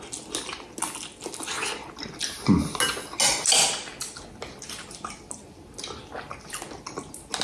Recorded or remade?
recorded